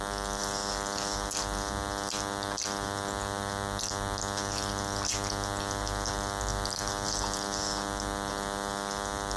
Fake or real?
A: real